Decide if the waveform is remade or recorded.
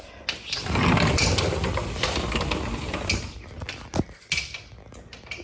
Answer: recorded